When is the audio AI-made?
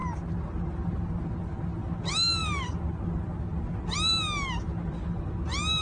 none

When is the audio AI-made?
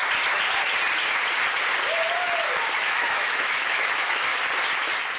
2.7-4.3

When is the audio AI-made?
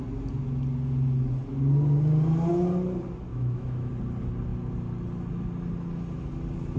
3.3-3.9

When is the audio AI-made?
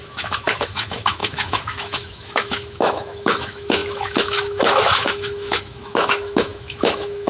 0.0-7.3